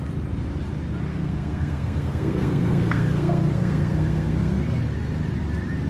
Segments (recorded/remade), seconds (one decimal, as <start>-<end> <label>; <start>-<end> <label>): 0.0-1.1 recorded; 1.1-4.6 remade; 4.6-5.9 recorded